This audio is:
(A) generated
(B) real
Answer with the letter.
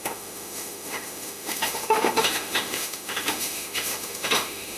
A